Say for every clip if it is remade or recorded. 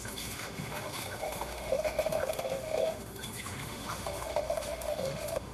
remade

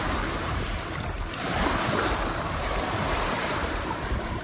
remade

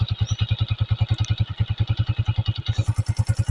recorded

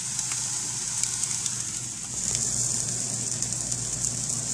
recorded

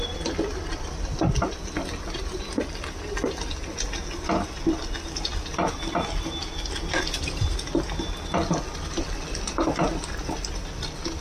recorded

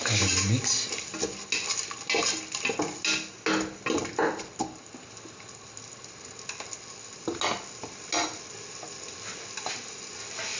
recorded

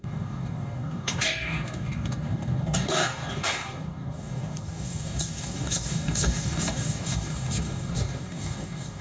remade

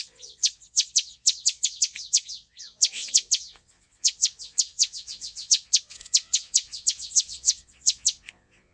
remade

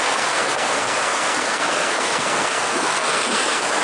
remade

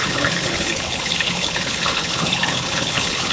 remade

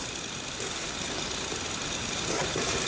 recorded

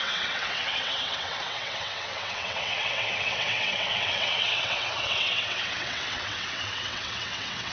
remade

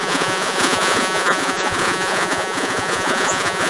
remade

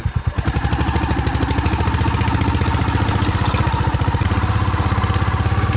recorded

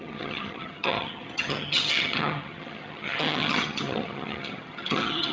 remade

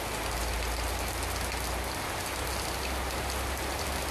recorded